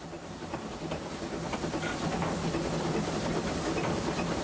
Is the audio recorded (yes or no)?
no